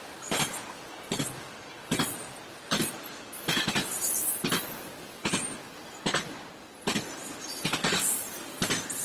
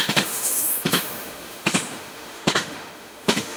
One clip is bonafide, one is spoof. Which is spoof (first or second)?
second